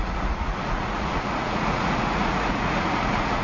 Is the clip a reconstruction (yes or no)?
yes